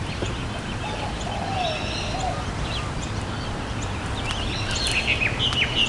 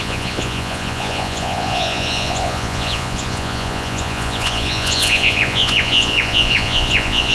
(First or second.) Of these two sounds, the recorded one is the first